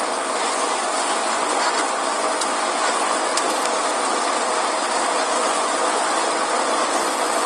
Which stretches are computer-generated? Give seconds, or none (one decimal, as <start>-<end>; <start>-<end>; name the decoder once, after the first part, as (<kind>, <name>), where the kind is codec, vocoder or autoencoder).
0.0-3.3 (vocoder, Vocos); 5.1-7.5